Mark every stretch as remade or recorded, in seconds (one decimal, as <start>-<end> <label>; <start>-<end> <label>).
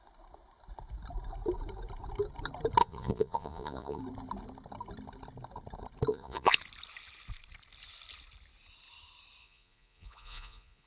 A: 0.0-2.8 recorded; 2.8-4.0 remade; 4.0-6.1 recorded; 6.1-6.6 remade; 6.6-9.4 recorded; 9.4-10.9 remade